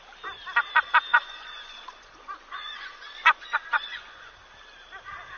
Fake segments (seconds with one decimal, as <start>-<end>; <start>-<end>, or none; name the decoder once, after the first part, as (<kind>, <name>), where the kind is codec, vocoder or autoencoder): 1.1-4.3 (vocoder, Vocos)